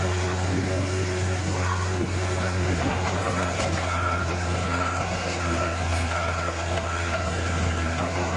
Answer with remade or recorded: remade